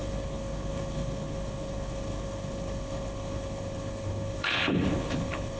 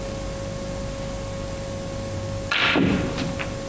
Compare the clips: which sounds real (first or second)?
second